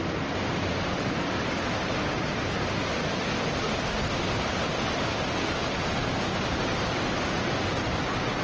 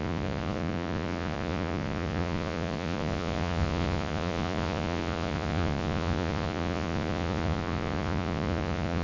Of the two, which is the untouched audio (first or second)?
first